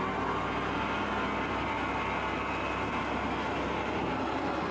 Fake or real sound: real